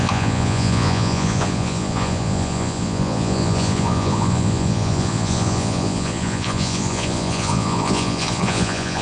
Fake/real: fake